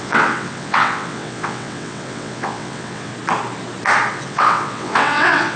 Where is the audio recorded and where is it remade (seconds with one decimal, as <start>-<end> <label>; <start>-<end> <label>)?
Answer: 0.0-3.1 remade; 3.1-4.1 recorded; 4.1-5.6 remade